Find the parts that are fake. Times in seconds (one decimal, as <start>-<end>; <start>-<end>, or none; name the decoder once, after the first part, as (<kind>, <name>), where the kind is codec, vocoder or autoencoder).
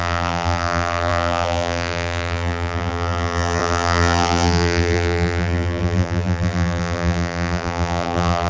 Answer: 0.0-8.5 (vocoder, BigVGAN v2)